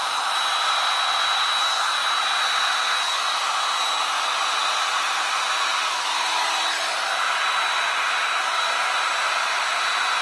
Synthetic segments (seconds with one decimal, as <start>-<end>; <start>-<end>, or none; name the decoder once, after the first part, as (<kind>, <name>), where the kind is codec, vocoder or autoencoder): 0.0-0.7 (vocoder, BigVGAN v2); 5.7-6.7